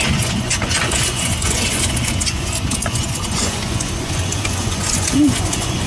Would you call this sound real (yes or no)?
no